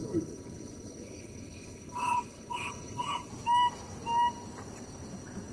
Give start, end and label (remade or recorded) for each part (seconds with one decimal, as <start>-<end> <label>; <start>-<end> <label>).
0.0-3.3 remade; 3.3-5.5 recorded

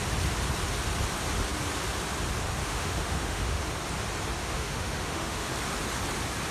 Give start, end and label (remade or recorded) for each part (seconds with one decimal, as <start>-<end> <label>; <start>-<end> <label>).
0.0-2.6 recorded; 2.6-3.6 remade; 3.6-4.4 recorded; 4.4-5.5 remade; 5.5-6.5 recorded